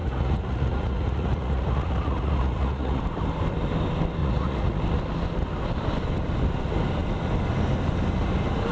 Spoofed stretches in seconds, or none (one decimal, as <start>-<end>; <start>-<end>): 0.0-3.0; 4.2-4.8